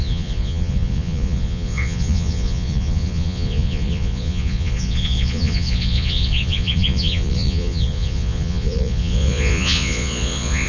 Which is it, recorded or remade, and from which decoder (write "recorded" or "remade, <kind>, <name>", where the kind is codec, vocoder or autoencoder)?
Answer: remade, vocoder, Vocos